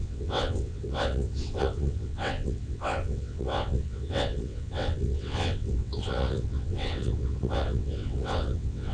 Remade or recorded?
remade